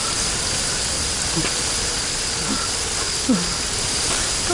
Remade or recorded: recorded